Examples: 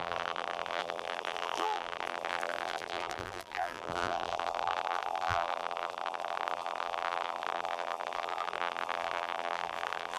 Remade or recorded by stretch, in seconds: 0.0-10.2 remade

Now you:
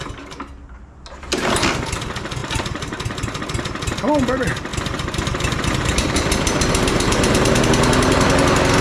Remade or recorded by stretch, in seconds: 0.0-2.4 recorded; 2.4-3.4 remade; 3.4-4.7 recorded; 4.7-7.6 remade; 7.6-8.8 recorded

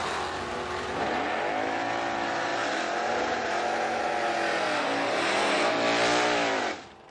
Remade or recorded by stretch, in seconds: 0.0-7.1 recorded